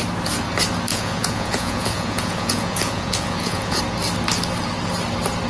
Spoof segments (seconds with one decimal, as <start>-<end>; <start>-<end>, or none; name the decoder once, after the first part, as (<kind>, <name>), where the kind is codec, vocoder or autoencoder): 0.9-3.8 (vocoder, Vocos)